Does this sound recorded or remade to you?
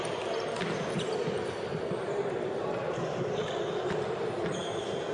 recorded